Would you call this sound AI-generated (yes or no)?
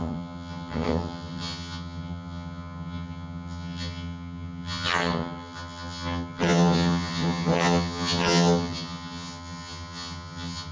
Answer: yes